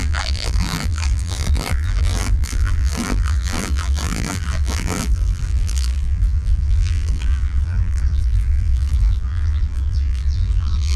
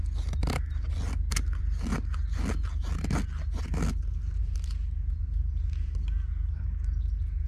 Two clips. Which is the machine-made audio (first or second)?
first